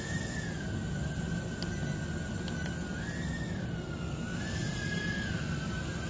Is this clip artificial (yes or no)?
no